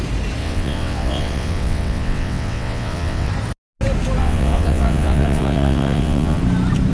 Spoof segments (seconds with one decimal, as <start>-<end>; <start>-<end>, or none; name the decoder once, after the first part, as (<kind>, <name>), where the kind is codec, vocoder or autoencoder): 0.4-3.3 (vocoder, WaveNeXt); 4.2-6.4